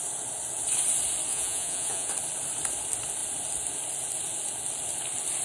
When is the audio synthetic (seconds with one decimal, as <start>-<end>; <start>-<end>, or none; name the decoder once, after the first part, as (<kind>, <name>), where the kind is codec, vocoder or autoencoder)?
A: 1.3-2.1 (vocoder, Vocos)